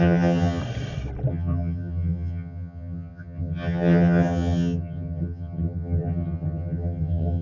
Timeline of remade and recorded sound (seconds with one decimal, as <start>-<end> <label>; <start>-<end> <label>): 0.0-0.6 remade; 0.6-1.3 recorded; 1.3-7.4 remade